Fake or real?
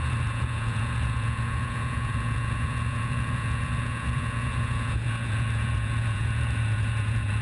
fake